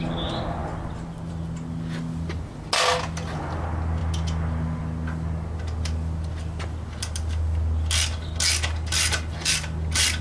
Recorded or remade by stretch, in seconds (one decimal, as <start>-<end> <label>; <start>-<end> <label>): 0.0-10.2 recorded